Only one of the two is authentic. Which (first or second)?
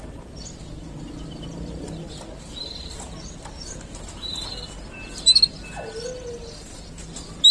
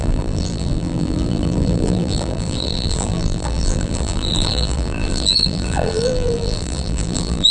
first